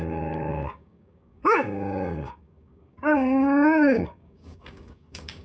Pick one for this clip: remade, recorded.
remade